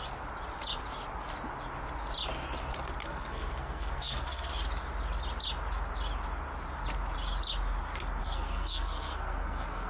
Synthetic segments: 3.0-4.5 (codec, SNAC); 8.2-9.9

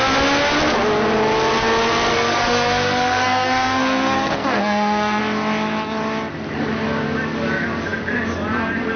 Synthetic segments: 2.1-5.2 (codec, SNAC)